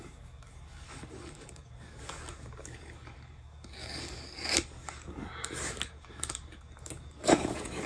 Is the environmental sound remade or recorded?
remade